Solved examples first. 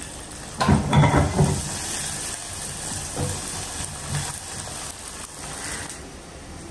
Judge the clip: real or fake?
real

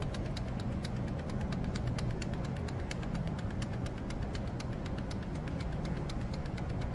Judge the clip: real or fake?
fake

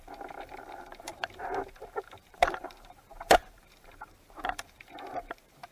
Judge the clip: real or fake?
fake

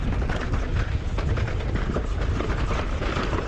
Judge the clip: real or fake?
fake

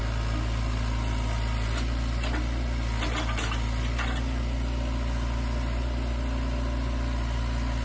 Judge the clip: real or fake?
real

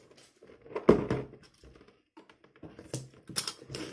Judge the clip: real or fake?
real